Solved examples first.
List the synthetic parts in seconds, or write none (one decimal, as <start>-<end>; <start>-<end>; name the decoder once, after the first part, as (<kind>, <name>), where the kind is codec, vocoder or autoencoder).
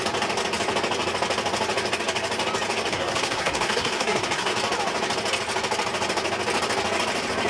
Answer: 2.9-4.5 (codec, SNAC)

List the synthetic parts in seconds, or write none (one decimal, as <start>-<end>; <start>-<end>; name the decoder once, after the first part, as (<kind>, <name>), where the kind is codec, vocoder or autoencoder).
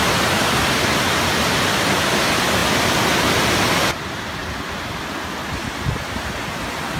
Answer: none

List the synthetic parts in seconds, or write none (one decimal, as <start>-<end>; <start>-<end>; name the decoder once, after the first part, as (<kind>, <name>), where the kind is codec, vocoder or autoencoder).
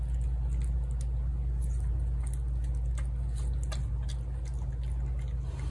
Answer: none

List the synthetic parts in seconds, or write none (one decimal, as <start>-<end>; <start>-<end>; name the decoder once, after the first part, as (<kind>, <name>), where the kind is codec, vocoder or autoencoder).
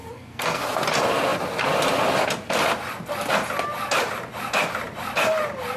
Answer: 0.0-0.6 (codec, SNAC)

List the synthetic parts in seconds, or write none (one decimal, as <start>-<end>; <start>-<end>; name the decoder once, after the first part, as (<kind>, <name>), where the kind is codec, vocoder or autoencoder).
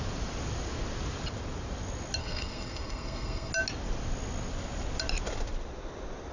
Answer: 2.2-3.5 (codec, SNAC)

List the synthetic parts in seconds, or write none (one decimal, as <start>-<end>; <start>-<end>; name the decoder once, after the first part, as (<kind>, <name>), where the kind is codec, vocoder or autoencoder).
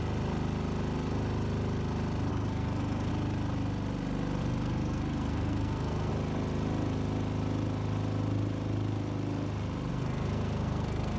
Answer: 2.3-3.1 (codec, SNAC); 4.4-6.1; 9.9-11.2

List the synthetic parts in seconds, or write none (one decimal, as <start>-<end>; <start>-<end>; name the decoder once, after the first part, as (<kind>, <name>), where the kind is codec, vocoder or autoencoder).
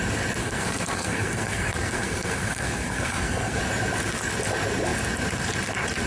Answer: 0.4-3.6 (codec, SNAC)